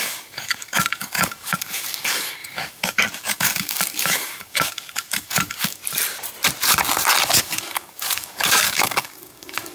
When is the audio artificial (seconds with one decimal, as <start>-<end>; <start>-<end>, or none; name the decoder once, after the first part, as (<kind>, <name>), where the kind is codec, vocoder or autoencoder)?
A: 0.0-5.8 (codec, DAC); 7.4-9.7